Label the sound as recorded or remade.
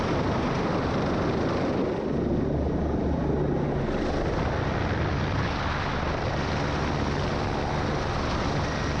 recorded